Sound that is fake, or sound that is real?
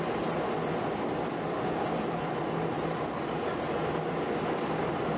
real